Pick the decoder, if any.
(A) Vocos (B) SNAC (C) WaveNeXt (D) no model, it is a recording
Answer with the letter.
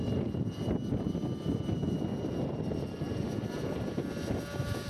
D